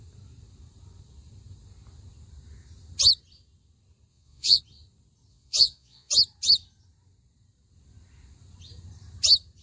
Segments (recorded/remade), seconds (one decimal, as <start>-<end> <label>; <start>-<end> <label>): 0.0-4.1 recorded; 4.1-4.6 remade; 4.6-5.3 recorded; 5.3-6.1 remade; 6.1-9.6 recorded